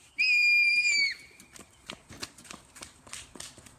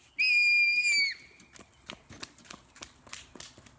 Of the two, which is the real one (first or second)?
second